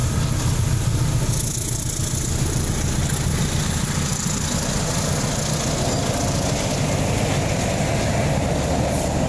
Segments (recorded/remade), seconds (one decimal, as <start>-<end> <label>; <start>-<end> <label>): 0.0-9.3 recorded